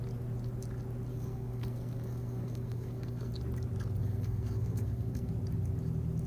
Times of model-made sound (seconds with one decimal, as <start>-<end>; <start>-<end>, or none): 1.1-3.3; 4.0-5.3